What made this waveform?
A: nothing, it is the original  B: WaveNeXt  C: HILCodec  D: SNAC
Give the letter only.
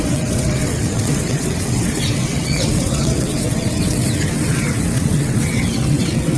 B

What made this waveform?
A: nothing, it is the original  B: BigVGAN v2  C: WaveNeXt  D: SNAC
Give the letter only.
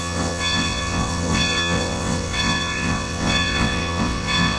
C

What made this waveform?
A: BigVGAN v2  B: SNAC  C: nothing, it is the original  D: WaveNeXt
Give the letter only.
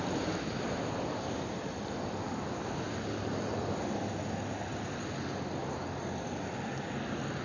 C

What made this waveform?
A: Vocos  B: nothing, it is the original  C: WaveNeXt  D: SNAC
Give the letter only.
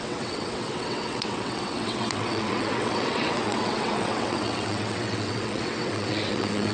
C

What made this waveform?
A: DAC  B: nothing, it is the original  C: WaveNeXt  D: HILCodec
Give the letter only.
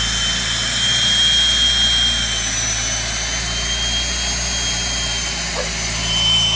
B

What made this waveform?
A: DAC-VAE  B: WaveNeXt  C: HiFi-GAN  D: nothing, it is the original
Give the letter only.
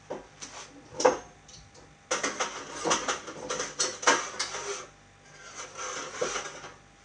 D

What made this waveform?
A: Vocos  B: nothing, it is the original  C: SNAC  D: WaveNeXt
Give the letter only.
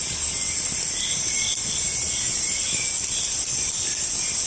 B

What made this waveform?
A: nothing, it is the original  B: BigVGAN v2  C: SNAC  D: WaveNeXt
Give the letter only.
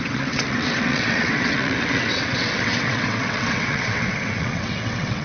D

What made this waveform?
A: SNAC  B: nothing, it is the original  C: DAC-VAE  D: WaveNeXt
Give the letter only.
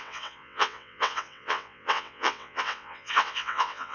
D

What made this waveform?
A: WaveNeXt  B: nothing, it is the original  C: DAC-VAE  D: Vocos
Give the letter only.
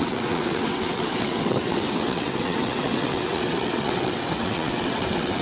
A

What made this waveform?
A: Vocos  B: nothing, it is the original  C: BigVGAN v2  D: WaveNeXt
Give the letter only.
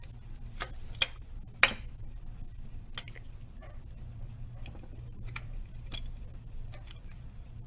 B